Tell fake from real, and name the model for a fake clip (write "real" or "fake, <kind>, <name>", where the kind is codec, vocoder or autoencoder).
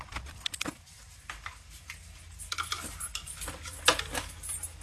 real